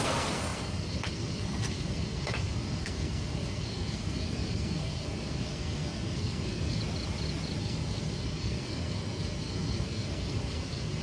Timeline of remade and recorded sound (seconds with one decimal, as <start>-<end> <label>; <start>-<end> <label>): 0.0-6.8 remade; 6.8-7.6 recorded; 7.6-11.0 remade